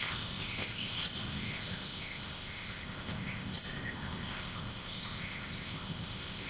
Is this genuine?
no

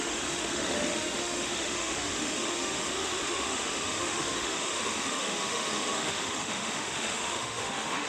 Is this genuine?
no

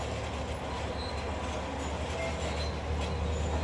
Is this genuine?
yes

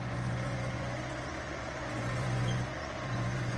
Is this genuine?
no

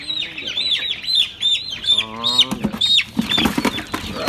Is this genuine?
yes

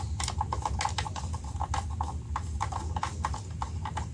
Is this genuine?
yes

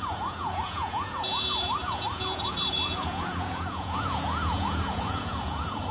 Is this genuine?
no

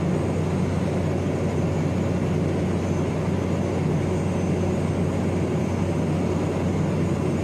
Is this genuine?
yes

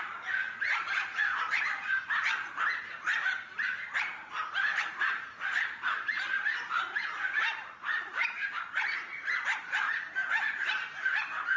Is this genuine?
yes